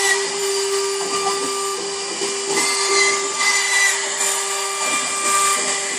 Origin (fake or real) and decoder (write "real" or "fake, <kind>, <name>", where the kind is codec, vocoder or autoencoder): real